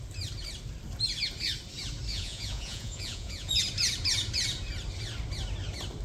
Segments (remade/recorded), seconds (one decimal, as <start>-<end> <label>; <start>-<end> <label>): 0.0-2.1 recorded; 2.1-3.5 remade; 3.5-6.0 recorded